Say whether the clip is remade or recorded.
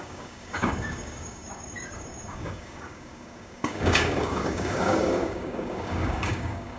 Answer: remade